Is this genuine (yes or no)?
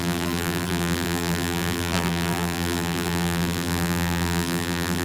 no